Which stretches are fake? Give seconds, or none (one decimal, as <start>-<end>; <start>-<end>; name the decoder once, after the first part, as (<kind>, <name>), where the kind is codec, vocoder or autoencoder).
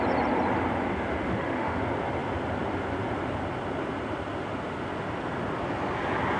1.3-1.8 (autoencoder, DAC-VAE)